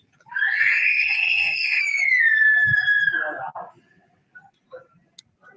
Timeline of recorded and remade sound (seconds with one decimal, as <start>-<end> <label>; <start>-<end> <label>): 0.0-0.6 recorded; 0.6-1.8 remade; 1.8-5.6 recorded